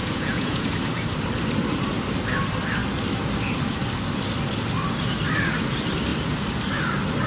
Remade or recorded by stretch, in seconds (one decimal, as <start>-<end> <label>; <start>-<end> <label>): 0.0-0.7 remade; 0.7-7.3 recorded